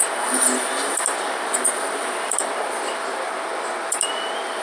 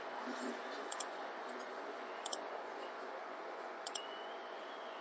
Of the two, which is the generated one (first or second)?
second